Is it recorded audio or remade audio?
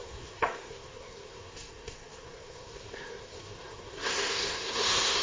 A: remade